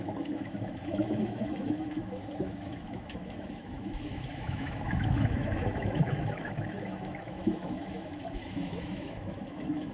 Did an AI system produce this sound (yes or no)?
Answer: yes